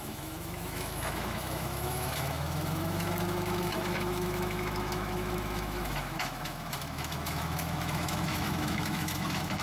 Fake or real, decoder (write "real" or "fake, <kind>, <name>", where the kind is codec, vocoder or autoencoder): fake, autoencoder, DAC-VAE